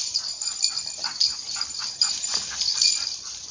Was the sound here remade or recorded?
remade